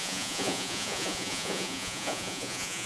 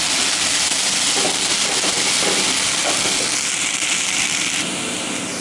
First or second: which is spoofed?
first